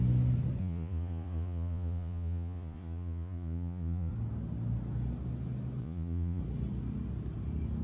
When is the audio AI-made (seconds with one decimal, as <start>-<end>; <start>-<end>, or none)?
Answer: 0.6-4.1; 5.8-6.4